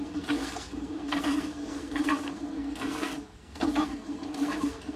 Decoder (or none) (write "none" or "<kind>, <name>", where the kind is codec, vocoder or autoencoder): codec, SNAC